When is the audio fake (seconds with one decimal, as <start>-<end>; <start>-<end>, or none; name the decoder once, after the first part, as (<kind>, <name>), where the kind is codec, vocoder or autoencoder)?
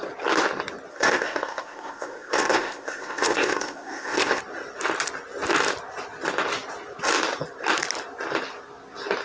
0.9-4.4 (codec, ZipCodec)